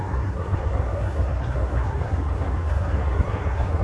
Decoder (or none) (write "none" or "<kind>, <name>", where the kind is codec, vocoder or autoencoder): codec, SNAC